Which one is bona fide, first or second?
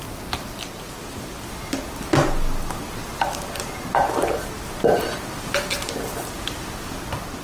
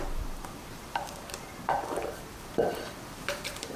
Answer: first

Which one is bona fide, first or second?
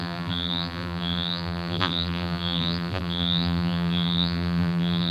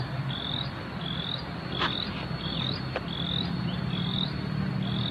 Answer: second